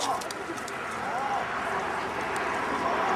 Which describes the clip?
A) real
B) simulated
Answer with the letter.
A